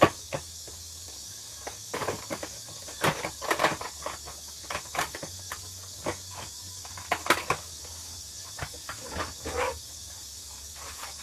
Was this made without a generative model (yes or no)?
no